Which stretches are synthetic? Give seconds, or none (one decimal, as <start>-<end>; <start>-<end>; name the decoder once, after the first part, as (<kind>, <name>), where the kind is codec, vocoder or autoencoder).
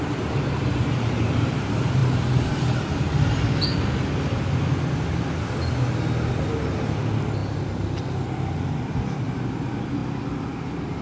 none